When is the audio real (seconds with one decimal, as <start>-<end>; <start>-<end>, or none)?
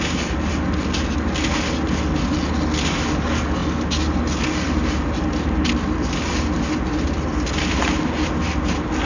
0.0-9.1